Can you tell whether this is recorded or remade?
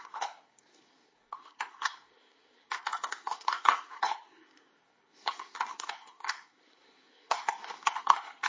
remade